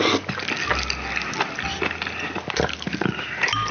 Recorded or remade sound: recorded